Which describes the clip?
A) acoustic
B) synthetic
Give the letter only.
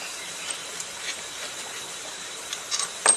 B